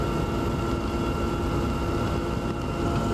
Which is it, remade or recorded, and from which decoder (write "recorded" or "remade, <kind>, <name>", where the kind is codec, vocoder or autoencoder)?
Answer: recorded